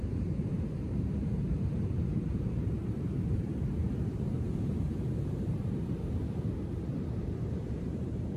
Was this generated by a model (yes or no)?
yes